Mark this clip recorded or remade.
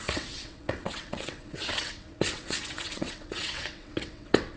remade